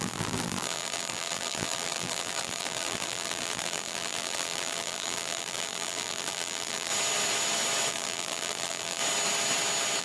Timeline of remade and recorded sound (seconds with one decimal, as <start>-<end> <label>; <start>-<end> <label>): 0.0-6.9 remade; 6.9-7.9 recorded; 7.9-9.0 remade; 9.0-10.0 recorded